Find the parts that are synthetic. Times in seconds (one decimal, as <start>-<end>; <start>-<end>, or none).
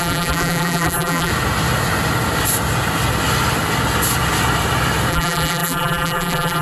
0.0-1.3; 5.1-6.6